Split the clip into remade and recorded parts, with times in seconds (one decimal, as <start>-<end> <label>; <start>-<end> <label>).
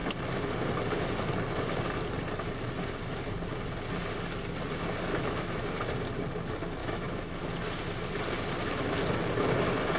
0.0-5.1 recorded; 5.1-5.6 remade; 5.6-6.8 recorded; 6.8-7.4 remade; 7.4-10.0 recorded